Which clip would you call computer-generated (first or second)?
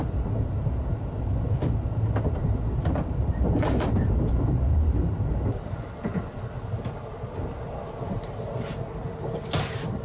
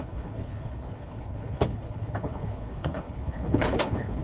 second